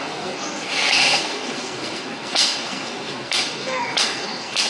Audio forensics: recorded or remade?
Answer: remade